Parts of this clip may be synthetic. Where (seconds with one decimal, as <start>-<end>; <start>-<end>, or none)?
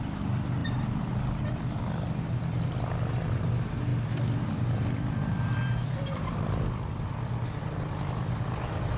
3.9-9.0